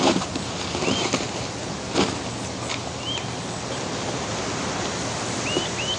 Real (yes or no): yes